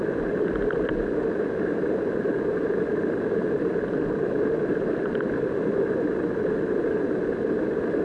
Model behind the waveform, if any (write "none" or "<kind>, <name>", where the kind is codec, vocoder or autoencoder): none